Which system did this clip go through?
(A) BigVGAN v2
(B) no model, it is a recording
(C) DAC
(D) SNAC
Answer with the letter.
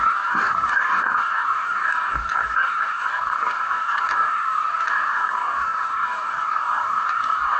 C